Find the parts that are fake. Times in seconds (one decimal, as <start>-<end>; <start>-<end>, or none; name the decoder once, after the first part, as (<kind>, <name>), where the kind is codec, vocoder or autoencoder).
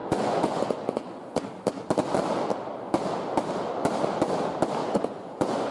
0.0-1.4 (vocoder, Vocos); 4.8-5.7